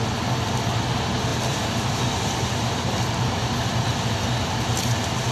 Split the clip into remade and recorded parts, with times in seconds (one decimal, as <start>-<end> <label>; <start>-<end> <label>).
0.0-1.3 recorded; 1.3-4.1 remade; 4.1-5.3 recorded